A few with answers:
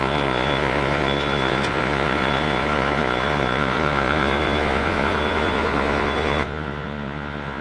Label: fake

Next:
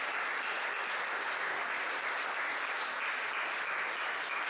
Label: real